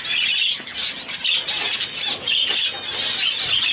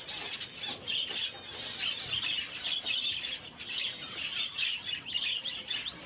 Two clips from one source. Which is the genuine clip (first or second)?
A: first